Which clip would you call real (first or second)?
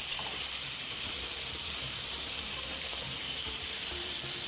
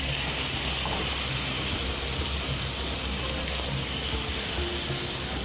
second